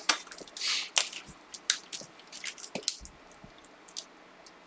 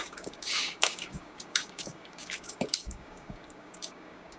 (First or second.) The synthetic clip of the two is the second